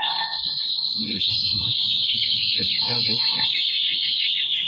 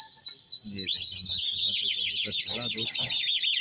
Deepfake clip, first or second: first